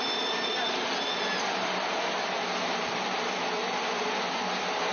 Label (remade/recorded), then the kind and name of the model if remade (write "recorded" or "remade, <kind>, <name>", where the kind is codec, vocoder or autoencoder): recorded